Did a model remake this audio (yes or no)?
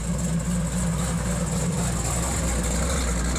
no